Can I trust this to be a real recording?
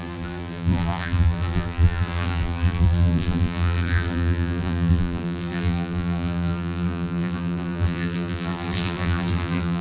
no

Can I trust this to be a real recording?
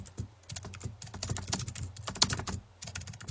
yes